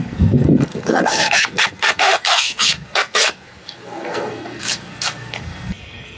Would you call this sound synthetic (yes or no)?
yes